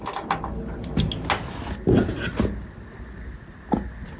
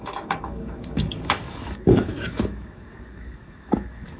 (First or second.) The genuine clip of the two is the first